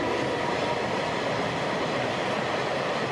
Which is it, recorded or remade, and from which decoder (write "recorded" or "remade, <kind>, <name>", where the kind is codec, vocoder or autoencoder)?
recorded